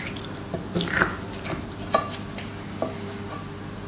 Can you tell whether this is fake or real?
real